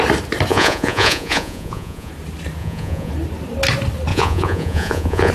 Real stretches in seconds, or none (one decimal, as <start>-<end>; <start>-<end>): 0.0-0.5; 2.1-2.6; 3.1-4.1